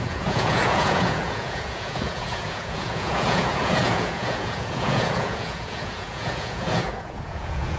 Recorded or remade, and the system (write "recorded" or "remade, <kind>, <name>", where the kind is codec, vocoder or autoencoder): remade, vocoder, Vocos